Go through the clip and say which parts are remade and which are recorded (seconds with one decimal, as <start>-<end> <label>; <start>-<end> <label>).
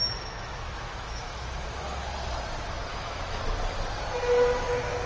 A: 0.0-2.1 remade; 2.1-2.9 recorded; 2.9-3.4 remade; 3.4-5.1 recorded